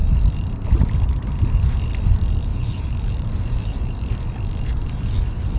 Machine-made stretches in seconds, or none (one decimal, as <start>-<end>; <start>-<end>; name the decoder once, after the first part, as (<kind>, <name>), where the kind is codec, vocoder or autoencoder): 2.5-4.1 (vocoder, BigVGAN v2)